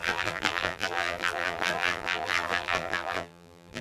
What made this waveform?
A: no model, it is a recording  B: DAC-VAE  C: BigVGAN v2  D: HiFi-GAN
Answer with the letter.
C